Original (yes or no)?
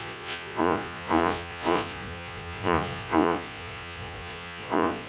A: no